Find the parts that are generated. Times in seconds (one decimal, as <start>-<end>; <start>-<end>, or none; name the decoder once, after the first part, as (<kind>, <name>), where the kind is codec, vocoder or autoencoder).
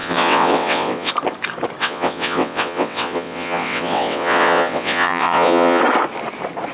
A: 0.0-1.1 (vocoder, WaveNeXt); 1.8-5.8